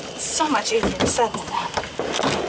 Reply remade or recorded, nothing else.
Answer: recorded